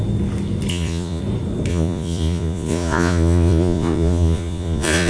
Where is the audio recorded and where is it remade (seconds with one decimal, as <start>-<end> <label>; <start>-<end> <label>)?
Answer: 0.0-0.7 recorded; 0.7-1.2 remade; 1.2-1.7 recorded; 1.7-5.1 remade